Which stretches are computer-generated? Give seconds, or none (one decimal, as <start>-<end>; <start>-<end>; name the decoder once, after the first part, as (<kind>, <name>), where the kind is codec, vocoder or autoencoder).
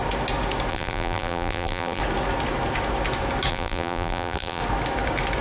0.7-2.0 (vocoder, BigVGAN v2); 3.5-4.6